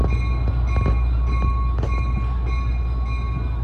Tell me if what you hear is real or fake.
real